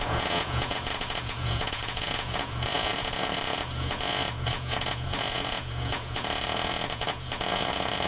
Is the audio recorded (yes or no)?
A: no